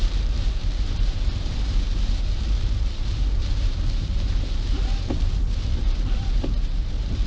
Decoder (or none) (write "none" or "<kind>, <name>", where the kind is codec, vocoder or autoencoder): vocoder, BigVGAN v2